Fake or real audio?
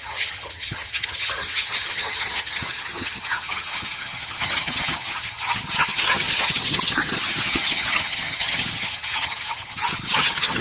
fake